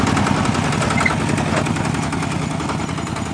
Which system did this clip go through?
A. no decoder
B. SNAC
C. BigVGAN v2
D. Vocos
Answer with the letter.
A